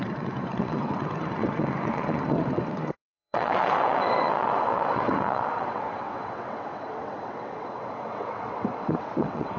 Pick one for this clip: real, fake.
fake